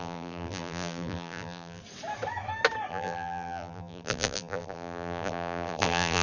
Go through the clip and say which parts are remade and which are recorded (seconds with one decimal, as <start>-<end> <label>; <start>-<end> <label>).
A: 0.0-1.8 remade; 1.8-2.9 recorded; 2.9-6.2 remade